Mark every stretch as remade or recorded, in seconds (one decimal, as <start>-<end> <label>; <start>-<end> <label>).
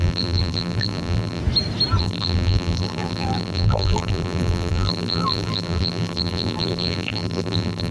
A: 0.0-1.4 remade; 1.4-2.0 recorded; 2.0-7.9 remade